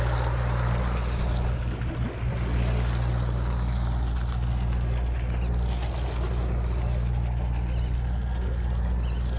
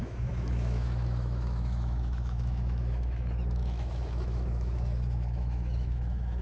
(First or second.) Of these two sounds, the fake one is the second